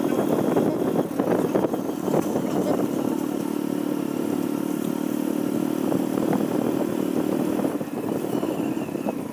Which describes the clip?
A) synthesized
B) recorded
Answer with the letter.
B